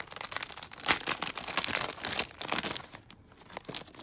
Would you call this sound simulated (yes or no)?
no